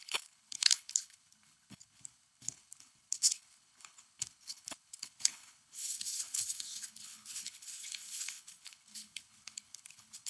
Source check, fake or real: fake